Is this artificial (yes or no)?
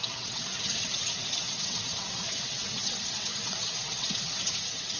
yes